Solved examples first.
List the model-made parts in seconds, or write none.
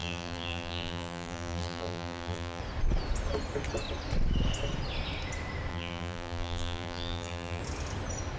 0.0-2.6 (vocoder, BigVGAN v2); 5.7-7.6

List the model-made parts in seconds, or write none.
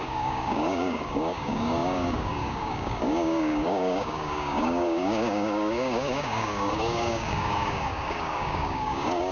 0.0-9.3 (codec, DAC)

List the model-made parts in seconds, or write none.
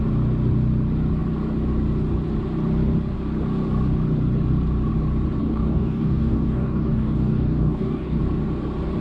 5.4-8.2 (codec, DAC)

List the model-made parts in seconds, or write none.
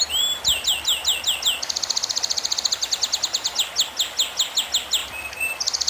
none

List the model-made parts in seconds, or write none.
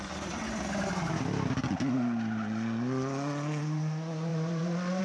4.3-5.0 (vocoder, BigVGAN v2)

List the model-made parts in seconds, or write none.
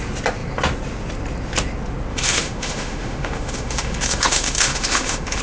2.1-5.4 (autoencoder, DAC-VAE)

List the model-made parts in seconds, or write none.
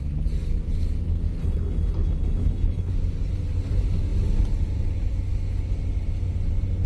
1.4-2.9 (codec, HILCodec)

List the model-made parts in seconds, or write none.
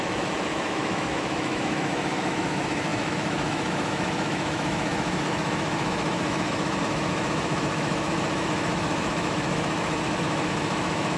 0.0-11.2 (autoencoder, DAC-VAE)